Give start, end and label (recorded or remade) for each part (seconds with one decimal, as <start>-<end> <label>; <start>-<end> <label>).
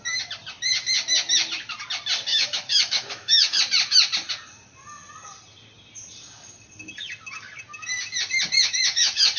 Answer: 0.0-2.3 recorded; 2.3-3.6 remade; 3.6-8.6 recorded; 8.6-9.4 remade